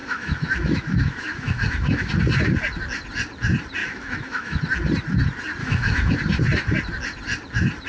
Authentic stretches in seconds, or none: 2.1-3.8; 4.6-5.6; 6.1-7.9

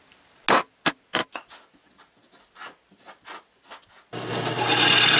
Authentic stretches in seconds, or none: 0.0-5.2